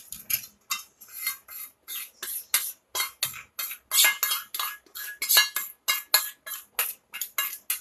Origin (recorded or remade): recorded